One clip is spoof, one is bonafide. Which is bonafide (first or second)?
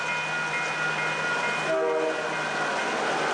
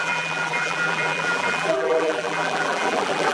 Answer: first